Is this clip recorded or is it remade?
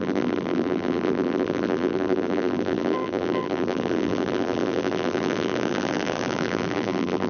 remade